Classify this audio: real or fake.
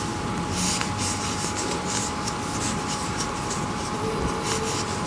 real